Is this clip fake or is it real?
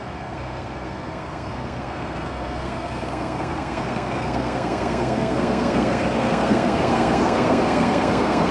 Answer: fake